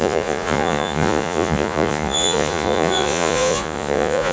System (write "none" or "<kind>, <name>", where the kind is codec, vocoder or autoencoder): vocoder, Vocos